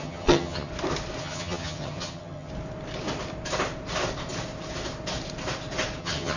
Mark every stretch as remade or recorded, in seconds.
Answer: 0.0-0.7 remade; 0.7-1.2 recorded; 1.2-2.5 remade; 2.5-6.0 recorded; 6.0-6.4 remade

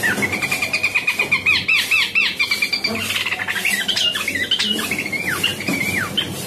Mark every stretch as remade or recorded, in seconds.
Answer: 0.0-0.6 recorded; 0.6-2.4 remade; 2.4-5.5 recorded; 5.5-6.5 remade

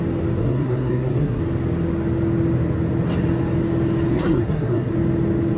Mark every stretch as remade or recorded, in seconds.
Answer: 0.0-0.4 recorded; 0.4-1.4 remade; 1.4-4.1 recorded; 4.1-4.9 remade; 4.9-5.6 recorded

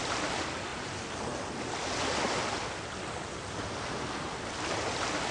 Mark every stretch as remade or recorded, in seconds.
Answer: 0.0-5.3 recorded